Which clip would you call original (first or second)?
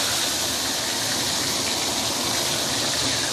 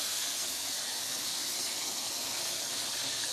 first